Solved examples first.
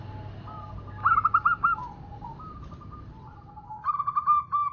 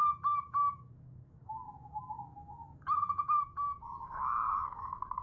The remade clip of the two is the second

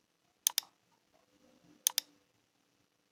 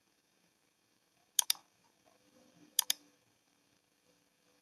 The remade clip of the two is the second